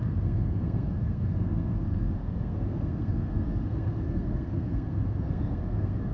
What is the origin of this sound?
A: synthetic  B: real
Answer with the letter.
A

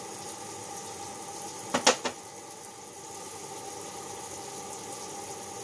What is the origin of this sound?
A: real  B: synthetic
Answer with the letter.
A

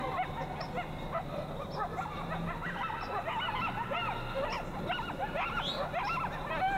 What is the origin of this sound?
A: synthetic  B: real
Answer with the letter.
B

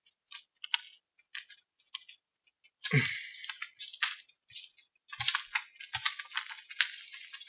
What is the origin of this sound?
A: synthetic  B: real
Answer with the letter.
B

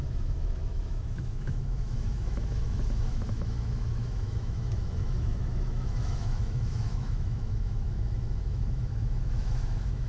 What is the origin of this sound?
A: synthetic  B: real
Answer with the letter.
A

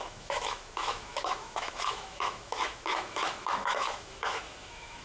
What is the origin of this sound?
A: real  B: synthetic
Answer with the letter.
B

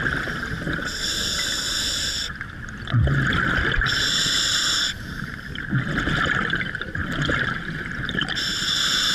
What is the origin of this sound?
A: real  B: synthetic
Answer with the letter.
A